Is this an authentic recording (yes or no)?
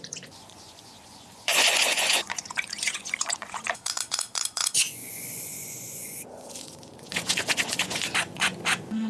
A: no